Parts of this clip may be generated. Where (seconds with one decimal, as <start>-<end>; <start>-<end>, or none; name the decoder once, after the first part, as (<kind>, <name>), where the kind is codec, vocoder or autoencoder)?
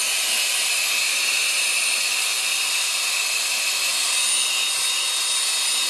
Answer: none